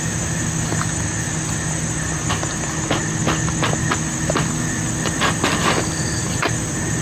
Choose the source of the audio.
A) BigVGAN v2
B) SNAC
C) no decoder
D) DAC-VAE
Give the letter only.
C